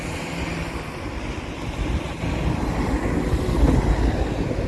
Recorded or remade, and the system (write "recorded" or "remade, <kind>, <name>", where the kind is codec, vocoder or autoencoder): recorded